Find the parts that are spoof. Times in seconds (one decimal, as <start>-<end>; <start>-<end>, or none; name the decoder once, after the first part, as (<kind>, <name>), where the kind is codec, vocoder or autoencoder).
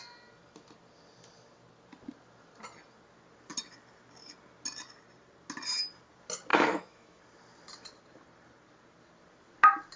6.5-7.2 (autoencoder, DAC-VAE)